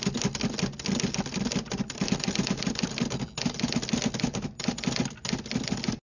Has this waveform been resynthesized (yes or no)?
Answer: no